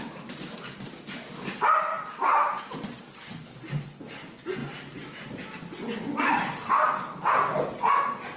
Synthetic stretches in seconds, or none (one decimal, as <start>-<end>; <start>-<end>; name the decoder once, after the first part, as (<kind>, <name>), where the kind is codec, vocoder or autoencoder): 1.9-2.6 (vocoder, BigVGAN v2)